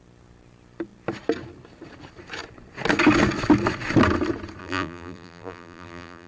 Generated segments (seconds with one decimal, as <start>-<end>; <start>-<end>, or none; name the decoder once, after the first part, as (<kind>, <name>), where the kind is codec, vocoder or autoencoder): 4.6-6.3 (vocoder, BigVGAN v2)